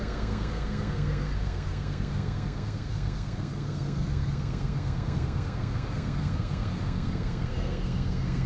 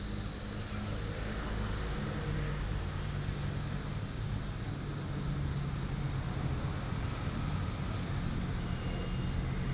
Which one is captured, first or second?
second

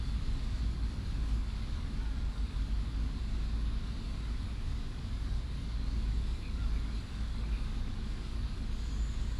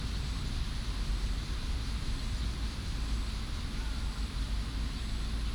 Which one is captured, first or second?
second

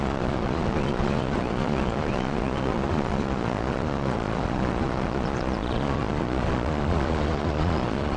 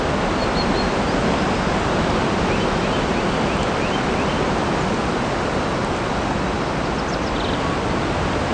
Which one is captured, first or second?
second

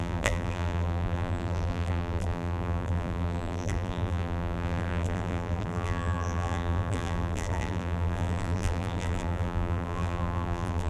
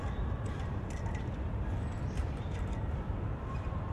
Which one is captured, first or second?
second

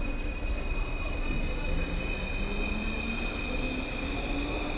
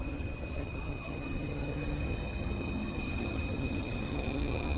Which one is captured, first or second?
first